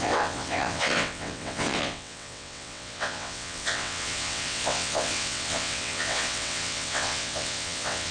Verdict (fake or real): fake